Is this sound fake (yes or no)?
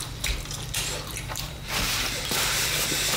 yes